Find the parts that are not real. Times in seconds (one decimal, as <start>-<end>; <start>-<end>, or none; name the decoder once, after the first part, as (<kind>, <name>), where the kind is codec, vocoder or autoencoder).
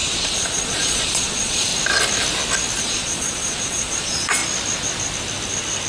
0.0-1.7 (vocoder, Vocos); 2.8-4.4